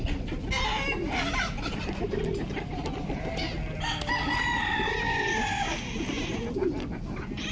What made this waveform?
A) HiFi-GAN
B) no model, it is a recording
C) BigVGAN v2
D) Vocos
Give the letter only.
B